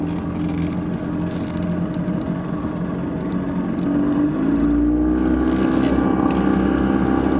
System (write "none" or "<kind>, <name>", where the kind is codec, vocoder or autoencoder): none